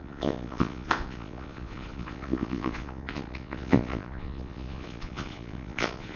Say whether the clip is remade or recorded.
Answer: remade